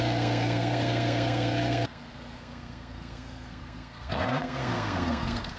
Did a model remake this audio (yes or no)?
yes